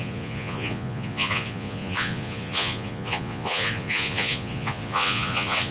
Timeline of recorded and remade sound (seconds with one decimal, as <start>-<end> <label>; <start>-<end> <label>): 0.0-5.7 remade

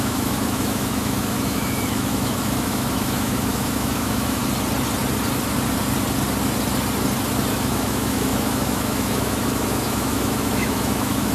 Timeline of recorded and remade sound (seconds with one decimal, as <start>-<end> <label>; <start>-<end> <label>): 0.0-4.4 remade; 4.4-7.5 recorded; 7.5-11.3 remade